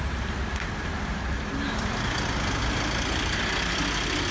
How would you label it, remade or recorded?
recorded